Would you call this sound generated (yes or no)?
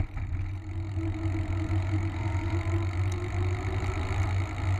no